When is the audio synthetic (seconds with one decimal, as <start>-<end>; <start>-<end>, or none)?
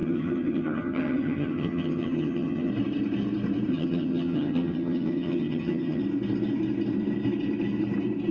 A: 0.0-2.7; 3.7-6.0